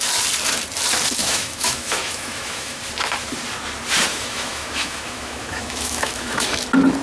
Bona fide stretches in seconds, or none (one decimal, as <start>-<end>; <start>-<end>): 0.0-1.2; 2.8-4.1; 6.6-7.0